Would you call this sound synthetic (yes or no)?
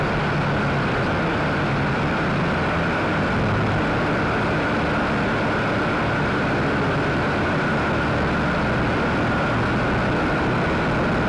no